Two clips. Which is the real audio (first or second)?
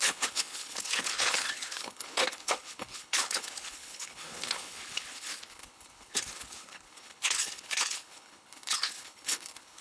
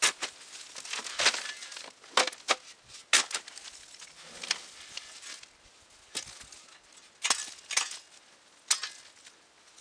second